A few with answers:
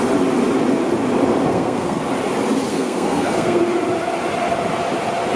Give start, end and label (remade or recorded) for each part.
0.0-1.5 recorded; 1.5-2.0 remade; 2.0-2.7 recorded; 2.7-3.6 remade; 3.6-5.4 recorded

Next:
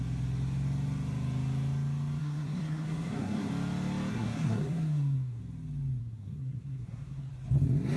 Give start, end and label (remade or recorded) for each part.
0.0-2.2 recorded; 2.2-3.5 remade; 3.5-4.1 recorded; 4.1-5.4 remade; 5.4-6.0 recorded; 6.0-7.3 remade; 7.3-8.0 recorded

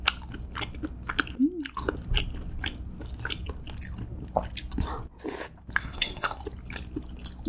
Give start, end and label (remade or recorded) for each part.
0.0-5.8 recorded; 5.8-6.4 remade; 6.4-7.5 recorded